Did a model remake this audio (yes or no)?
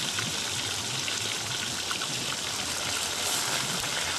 no